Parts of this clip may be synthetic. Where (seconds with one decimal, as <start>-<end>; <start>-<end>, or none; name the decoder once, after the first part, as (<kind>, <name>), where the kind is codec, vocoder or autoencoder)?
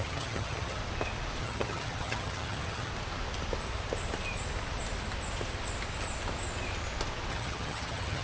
0.0-0.8 (vocoder, HiFi-GAN); 1.4-2.9; 7.3-8.2